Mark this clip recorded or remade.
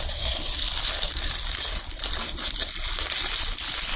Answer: recorded